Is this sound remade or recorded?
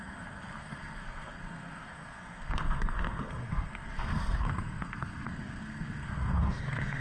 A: remade